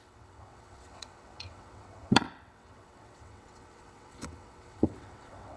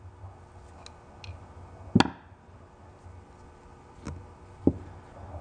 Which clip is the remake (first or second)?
first